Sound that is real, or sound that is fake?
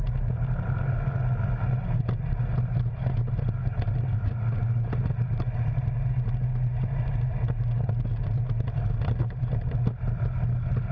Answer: real